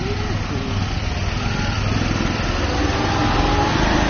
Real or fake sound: real